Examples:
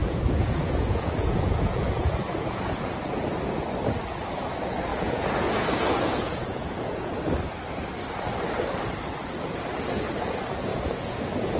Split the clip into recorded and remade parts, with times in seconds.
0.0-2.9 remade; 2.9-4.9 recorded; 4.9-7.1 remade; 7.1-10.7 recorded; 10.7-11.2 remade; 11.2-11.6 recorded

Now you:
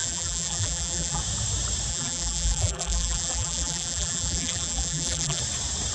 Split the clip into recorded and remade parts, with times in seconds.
0.0-1.2 remade; 1.2-1.9 recorded; 1.9-5.4 remade; 5.4-5.9 recorded

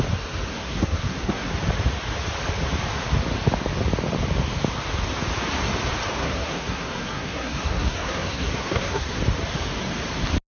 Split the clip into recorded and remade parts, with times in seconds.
0.0-0.5 recorded; 0.5-1.5 remade; 1.5-6.2 recorded; 6.2-9.2 remade; 9.2-10.6 recorded

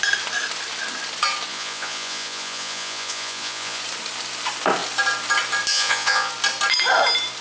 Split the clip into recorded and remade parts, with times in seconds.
0.0-1.5 recorded; 1.5-3.8 remade; 3.8-5.7 recorded; 5.7-6.3 remade; 6.3-7.4 recorded

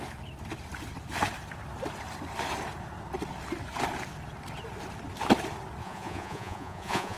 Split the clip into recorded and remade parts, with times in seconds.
0.0-5.8 recorded; 5.8-7.2 remade

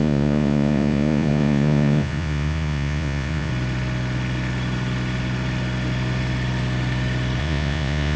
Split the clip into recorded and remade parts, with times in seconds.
0.0-3.5 remade; 3.5-7.4 recorded; 7.4-8.2 remade

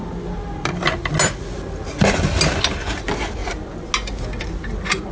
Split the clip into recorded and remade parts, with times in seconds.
0.0-5.1 recorded